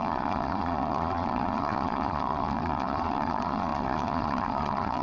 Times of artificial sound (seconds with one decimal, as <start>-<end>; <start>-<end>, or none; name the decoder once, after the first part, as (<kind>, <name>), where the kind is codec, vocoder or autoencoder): 0.0-5.0 (vocoder, Vocos)